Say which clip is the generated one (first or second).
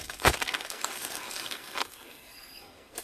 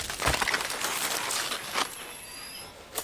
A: first